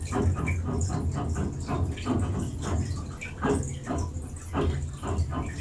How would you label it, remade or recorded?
recorded